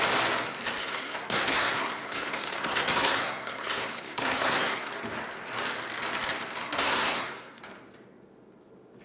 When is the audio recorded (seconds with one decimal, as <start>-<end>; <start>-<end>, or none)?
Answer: 0.0-0.8; 4.9-6.6; 7.6-9.0